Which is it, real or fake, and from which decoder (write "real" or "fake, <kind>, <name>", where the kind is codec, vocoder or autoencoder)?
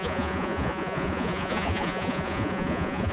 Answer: fake, vocoder, Vocos